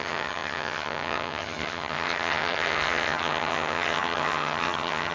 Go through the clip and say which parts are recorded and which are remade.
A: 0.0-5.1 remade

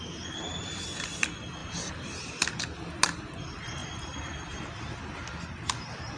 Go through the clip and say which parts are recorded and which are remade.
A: 0.0-6.2 recorded

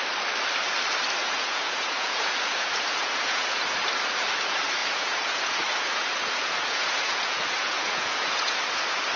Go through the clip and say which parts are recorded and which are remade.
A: 0.0-1.2 recorded; 1.2-3.8 remade; 3.8-4.8 recorded; 4.8-9.2 remade